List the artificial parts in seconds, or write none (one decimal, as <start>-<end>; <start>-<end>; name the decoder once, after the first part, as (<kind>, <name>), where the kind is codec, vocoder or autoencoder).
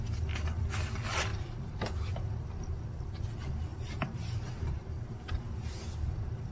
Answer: 1.3-2.3 (vocoder, BigVGAN v2); 3.7-6.5